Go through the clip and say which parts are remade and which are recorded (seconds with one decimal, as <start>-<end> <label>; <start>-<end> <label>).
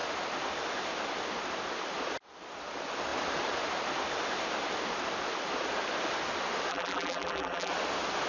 0.0-6.7 recorded; 6.7-7.7 remade; 7.7-8.3 recorded